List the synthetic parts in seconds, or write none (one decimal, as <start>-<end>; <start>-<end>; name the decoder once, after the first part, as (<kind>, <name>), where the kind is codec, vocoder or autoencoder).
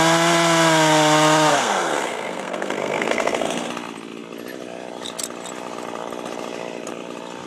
1.5-3.7 (codec, SNAC)